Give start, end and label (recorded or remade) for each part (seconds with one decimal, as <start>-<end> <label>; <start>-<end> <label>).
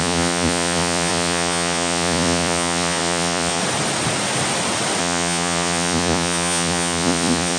0.0-3.6 remade; 3.6-5.0 recorded; 5.0-7.6 remade